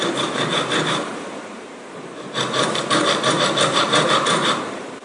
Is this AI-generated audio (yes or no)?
yes